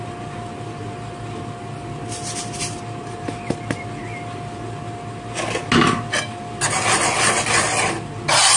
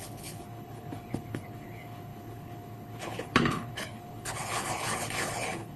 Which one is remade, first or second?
second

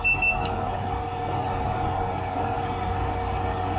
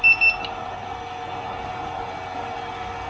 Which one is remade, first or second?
first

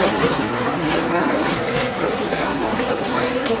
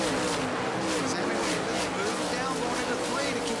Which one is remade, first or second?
first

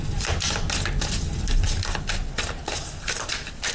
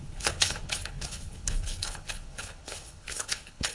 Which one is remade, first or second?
second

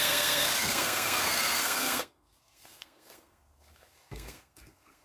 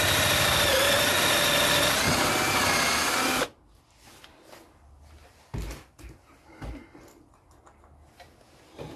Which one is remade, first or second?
first